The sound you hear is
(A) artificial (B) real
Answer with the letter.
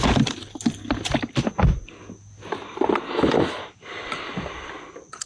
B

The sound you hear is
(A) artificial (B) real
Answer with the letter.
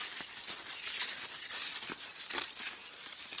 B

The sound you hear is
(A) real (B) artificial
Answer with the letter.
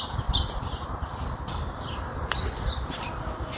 A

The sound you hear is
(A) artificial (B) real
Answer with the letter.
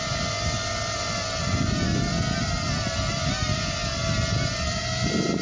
B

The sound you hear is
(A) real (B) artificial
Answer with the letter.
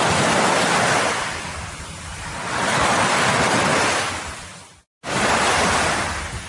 A